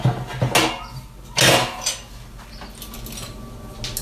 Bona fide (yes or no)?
yes